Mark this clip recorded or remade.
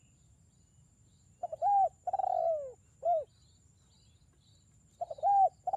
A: recorded